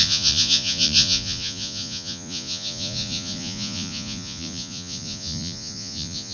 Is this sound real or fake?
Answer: fake